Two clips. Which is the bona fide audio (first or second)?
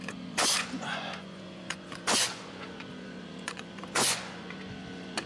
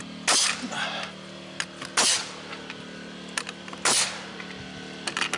second